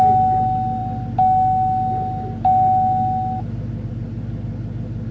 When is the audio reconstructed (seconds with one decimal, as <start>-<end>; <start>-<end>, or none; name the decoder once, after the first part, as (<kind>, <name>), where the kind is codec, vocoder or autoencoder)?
none